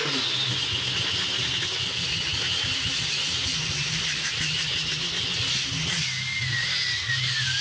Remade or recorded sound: recorded